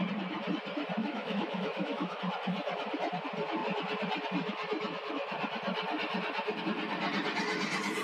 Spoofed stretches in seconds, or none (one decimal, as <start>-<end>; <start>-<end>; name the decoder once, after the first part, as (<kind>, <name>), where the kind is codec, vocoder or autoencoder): 1.0-2.2 (autoencoder, DAC-VAE)